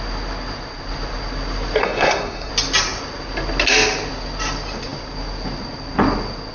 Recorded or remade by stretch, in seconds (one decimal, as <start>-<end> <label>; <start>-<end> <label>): 0.0-1.8 recorded; 1.8-2.5 remade; 2.5-6.5 recorded

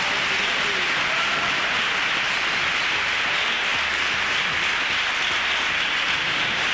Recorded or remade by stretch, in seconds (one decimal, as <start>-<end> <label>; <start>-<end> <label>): 0.0-6.7 recorded